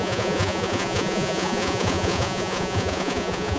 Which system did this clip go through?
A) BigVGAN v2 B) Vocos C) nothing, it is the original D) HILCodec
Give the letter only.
B